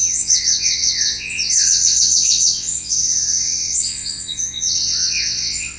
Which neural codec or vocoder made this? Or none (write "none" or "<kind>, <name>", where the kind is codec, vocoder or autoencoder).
vocoder, WaveNeXt